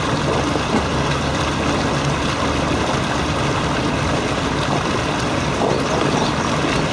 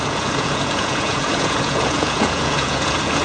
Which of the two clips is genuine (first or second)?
first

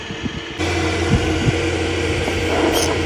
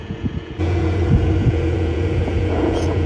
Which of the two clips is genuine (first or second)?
first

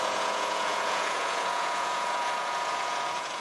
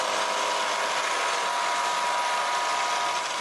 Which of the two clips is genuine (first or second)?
second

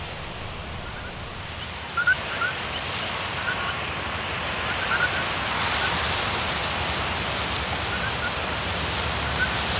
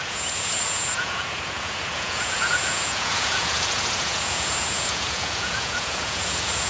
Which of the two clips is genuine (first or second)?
first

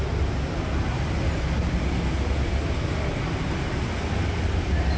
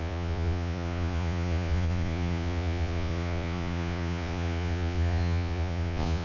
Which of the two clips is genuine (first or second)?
first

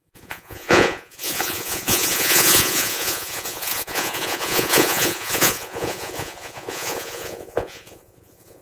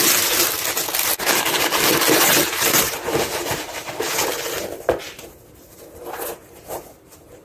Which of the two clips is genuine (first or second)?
second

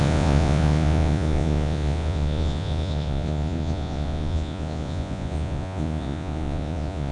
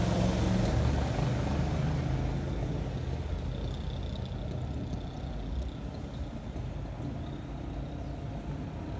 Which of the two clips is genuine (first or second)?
second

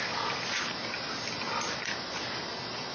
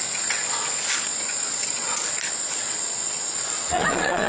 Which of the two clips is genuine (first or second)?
first